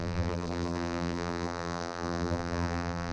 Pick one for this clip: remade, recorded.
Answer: remade